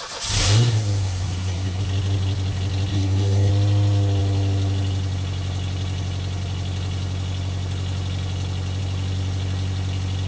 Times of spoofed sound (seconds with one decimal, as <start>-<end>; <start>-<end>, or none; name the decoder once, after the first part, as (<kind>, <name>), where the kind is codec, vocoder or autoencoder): 0.4-1.8 (codec, SNAC); 2.9-3.5